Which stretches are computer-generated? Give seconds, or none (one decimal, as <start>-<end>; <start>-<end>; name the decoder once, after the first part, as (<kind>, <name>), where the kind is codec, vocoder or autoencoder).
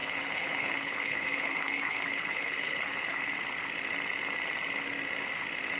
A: 0.0-3.2 (codec, HILCodec)